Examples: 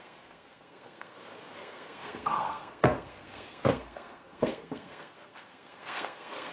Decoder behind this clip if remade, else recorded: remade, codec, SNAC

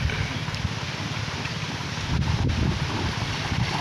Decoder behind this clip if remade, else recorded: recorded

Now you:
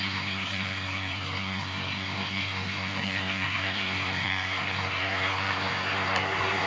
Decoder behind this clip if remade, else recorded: remade, codec, SNAC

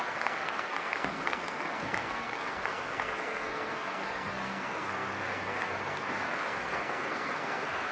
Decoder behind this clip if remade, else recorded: remade, codec, SNAC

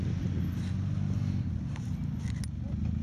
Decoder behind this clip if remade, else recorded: recorded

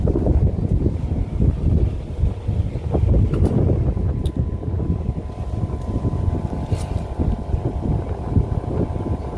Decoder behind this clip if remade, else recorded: recorded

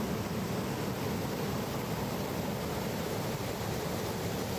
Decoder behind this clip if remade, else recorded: recorded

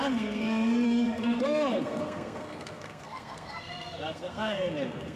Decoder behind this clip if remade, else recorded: remade, codec, SNAC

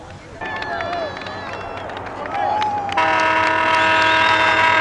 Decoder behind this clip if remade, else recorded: recorded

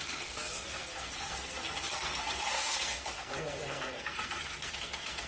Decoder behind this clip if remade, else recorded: remade, codec, SNAC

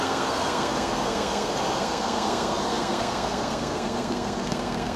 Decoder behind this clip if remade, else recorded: remade, codec, SNAC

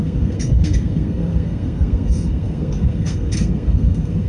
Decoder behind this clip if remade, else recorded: remade, codec, SNAC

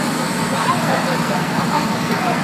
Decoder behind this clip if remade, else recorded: remade, codec, SNAC